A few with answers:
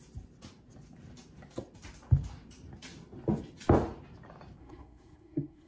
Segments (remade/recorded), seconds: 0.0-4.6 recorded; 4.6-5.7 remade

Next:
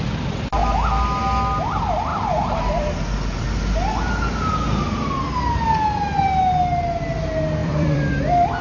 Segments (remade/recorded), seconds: 0.0-7.6 recorded; 7.6-8.1 remade; 8.1-8.6 recorded

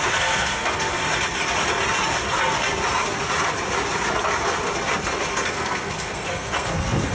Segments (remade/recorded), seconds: 0.0-1.0 remade; 1.0-5.3 recorded; 5.3-7.1 remade

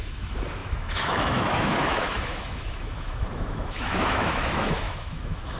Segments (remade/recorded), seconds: 0.0-5.6 remade

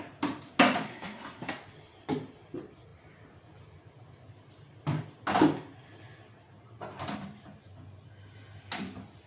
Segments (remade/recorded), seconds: 0.0-0.9 recorded; 0.9-1.5 remade; 1.5-9.3 recorded